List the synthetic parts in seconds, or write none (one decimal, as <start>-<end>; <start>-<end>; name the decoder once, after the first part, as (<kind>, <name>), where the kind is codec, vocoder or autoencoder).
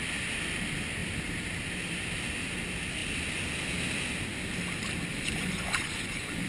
5.1-6.5 (vocoder, Vocos)